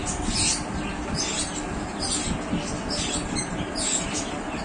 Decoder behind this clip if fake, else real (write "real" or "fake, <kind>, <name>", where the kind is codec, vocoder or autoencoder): real